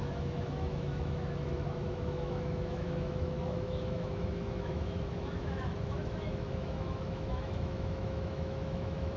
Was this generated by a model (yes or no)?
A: yes